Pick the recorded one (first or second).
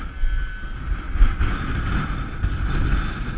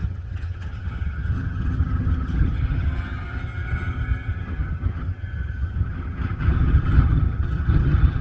first